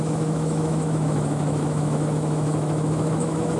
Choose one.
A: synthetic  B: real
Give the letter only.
A